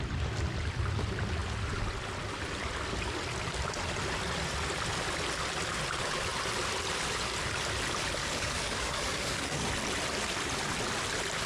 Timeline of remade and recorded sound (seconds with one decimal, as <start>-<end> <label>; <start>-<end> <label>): 0.0-8.2 recorded; 8.2-9.7 remade; 9.7-11.5 recorded